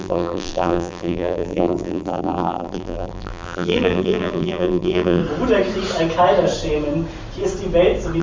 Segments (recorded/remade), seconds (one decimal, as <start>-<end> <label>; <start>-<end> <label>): 0.0-5.2 remade; 5.2-8.2 recorded